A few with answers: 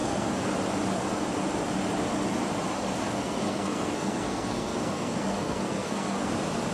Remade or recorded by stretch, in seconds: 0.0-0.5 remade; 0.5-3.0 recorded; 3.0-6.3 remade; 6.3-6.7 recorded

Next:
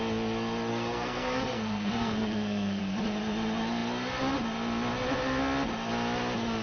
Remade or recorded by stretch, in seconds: 0.0-0.7 recorded; 0.7-2.8 remade; 2.8-6.6 recorded

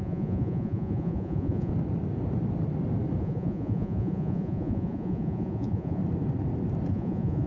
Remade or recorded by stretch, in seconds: 0.0-1.7 remade; 1.7-3.2 recorded; 3.2-6.0 remade; 6.0-6.9 recorded; 6.9-7.5 remade

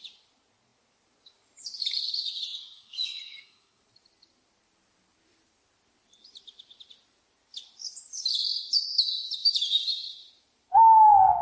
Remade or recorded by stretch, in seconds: 0.0-2.5 recorded; 2.5-3.8 remade; 3.8-11.4 recorded